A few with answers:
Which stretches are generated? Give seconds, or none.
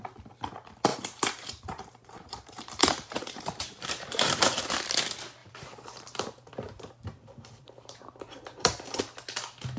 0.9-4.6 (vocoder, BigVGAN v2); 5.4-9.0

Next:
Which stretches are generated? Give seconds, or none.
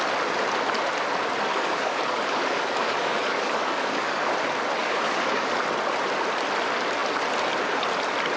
1.5-4.3 (codec, DAC); 4.8-5.6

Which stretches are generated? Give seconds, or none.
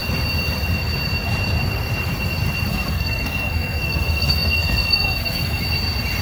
2.7-5.6 (codec, SNAC)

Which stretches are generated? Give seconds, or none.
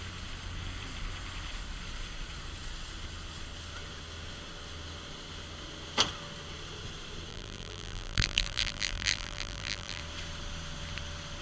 7.3-10.0 (vocoder, BigVGAN v2)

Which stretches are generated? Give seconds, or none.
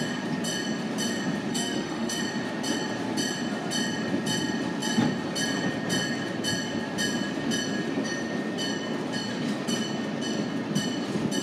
1.5-2.2 (autoencoder, DAC-VAE)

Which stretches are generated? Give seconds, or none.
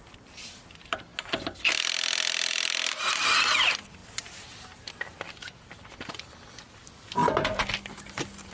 0.0-1.1 (vocoder, BigVGAN v2); 1.6-4.0; 4.9-7.2; 8.1-8.5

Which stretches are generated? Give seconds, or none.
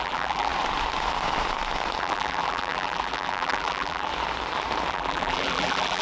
0.0-0.5 (vocoder, BigVGAN v2); 2.0-4.1; 4.9-6.0